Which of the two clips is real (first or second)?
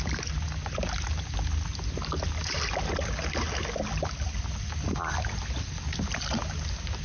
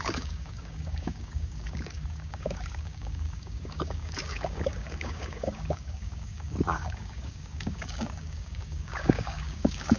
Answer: first